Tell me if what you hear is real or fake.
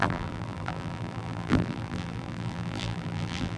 fake